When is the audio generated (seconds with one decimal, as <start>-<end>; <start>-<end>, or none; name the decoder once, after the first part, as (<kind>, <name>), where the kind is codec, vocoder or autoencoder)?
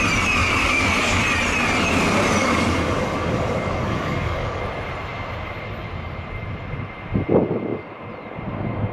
0.4-1.2 (codec, DAC); 2.4-4.6